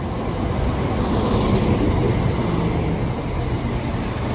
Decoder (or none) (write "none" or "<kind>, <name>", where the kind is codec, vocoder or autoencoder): none